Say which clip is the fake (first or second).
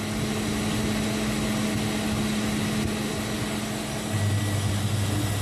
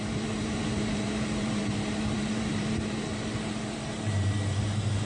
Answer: second